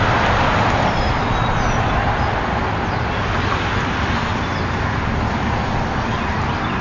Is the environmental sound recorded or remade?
recorded